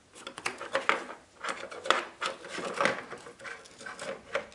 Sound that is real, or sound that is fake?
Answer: real